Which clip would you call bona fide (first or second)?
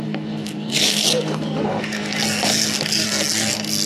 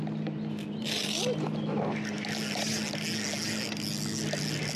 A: second